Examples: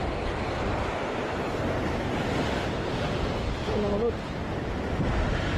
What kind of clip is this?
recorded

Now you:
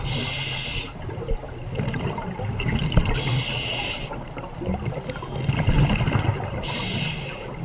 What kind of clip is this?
recorded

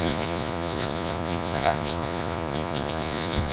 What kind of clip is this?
remade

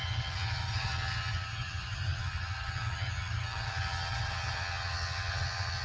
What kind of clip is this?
remade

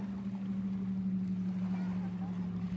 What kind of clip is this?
recorded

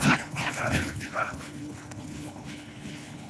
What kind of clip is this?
remade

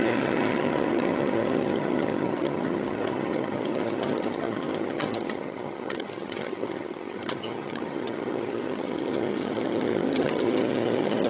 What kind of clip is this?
remade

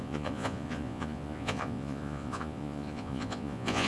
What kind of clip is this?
remade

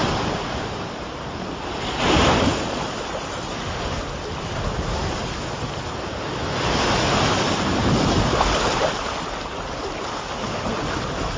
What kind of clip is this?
recorded